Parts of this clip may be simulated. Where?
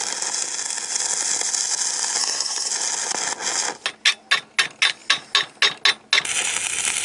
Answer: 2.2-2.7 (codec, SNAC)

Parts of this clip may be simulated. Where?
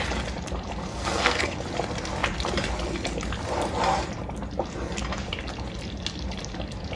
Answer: 0.8-1.5 (codec, SNAC)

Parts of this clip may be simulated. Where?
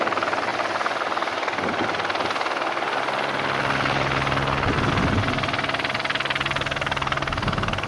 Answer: none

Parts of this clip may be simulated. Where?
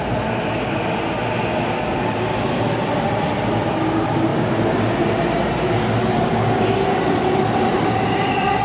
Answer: none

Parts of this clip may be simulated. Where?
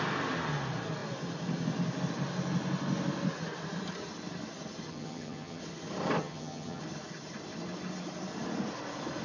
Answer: 4.9-5.6 (vocoder, HiFi-GAN); 6.2-6.8